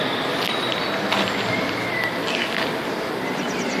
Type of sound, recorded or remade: recorded